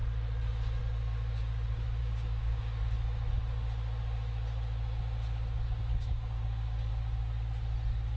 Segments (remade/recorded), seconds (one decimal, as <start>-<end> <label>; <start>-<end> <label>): 0.0-2.0 recorded; 2.0-2.8 remade; 2.8-5.9 recorded; 5.9-6.9 remade; 6.9-8.2 recorded